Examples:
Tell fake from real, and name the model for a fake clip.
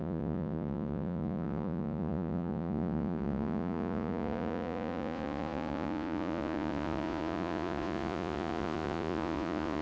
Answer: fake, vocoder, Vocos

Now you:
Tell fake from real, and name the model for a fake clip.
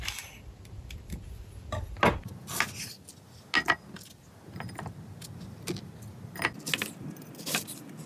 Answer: real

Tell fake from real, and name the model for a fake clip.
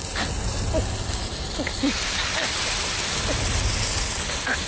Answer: real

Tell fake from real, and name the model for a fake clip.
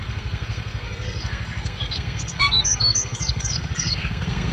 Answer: fake, codec, SNAC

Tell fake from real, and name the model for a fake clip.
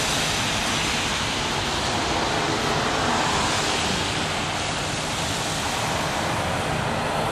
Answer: real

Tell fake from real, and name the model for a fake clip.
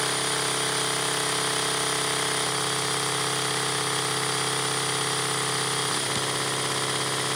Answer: real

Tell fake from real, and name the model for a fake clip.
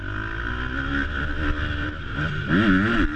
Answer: real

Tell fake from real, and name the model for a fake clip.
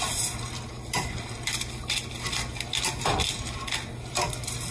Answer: real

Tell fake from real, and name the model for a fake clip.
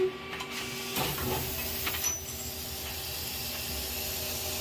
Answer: real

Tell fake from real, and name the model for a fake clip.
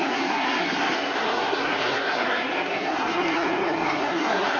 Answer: fake, codec, SNAC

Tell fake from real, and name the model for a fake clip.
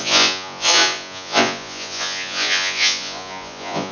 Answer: fake, vocoder, Vocos